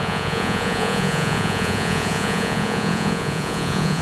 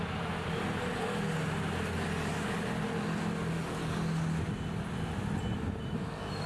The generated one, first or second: first